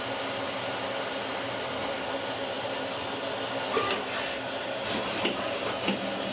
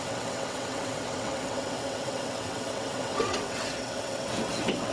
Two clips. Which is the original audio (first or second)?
first